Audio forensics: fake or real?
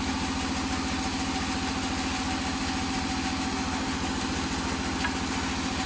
real